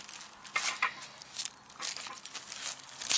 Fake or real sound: real